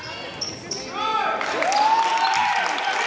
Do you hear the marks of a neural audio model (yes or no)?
no